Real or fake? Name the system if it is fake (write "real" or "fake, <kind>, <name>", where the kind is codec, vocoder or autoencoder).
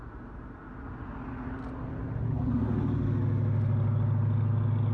real